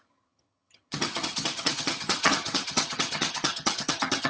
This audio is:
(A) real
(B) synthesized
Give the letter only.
B